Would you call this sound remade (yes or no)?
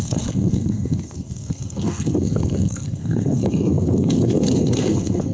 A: yes